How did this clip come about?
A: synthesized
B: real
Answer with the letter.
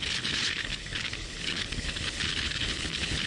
A